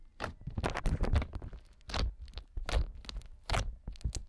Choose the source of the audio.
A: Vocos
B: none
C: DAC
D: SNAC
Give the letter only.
B